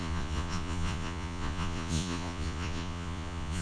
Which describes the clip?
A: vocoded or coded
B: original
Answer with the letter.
A